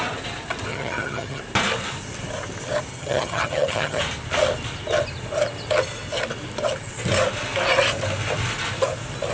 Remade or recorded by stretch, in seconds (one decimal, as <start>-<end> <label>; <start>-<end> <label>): 0.0-0.7 recorded; 0.7-1.4 remade; 1.4-2.9 recorded; 2.9-4.0 remade; 4.0-9.3 recorded